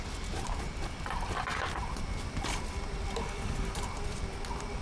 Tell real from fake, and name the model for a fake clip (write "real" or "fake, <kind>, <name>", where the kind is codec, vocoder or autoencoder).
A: real